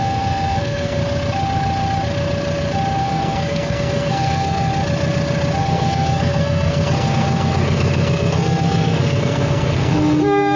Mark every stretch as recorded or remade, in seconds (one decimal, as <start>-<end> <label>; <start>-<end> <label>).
0.0-1.0 remade; 1.0-3.0 recorded; 3.0-4.7 remade; 4.7-5.6 recorded; 5.6-10.6 remade